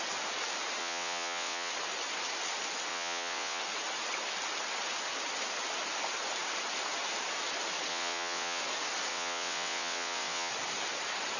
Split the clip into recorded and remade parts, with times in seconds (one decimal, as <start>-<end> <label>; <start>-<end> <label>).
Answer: 0.0-0.8 recorded; 0.8-1.7 remade; 1.7-2.9 recorded; 2.9-3.6 remade; 3.6-7.9 recorded; 7.9-8.6 remade; 8.6-9.1 recorded; 9.1-10.5 remade; 10.5-11.4 recorded

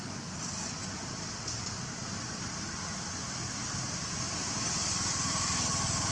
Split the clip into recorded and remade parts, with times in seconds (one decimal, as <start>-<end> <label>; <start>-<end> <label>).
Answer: 0.0-6.1 recorded

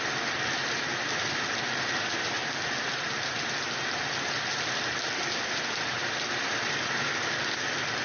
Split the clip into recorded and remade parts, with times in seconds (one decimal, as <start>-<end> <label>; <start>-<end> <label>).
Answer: 0.0-8.0 recorded

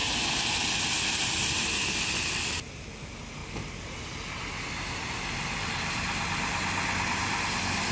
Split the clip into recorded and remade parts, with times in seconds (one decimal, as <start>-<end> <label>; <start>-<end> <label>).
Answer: 0.0-7.9 recorded